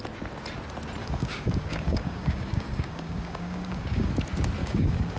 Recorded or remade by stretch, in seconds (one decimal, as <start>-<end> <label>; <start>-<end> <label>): 0.0-1.0 recorded; 1.0-4.1 remade; 4.1-4.6 recorded; 4.6-5.2 remade